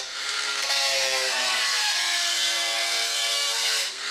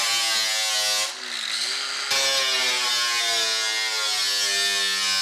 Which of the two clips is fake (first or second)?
first